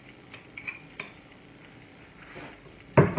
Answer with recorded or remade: remade